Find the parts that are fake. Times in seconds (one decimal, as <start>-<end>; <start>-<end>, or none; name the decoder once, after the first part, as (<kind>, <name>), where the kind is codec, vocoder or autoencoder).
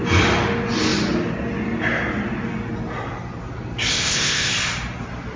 3.9-4.5 (codec, ZipCodec)